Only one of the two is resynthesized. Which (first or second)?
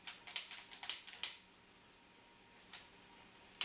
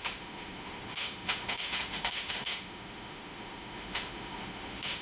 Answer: second